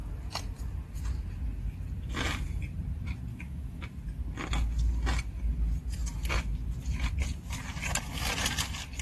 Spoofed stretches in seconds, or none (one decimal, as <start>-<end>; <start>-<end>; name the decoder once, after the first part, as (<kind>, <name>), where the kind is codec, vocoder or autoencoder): 3.3-3.8 (autoencoder, DAC-VAE)